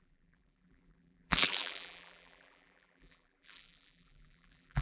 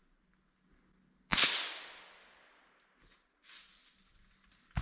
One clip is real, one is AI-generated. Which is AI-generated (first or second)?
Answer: first